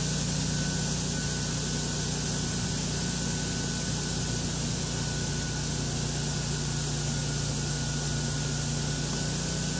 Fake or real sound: real